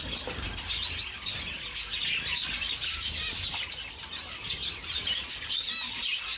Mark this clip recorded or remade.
recorded